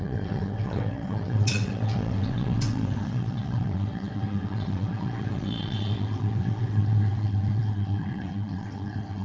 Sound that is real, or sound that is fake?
fake